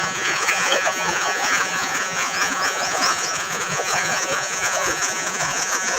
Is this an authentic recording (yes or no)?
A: no